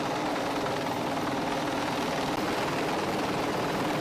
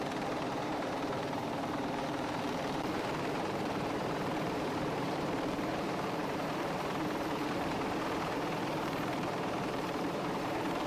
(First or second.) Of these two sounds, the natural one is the first